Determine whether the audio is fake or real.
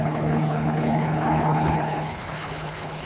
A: fake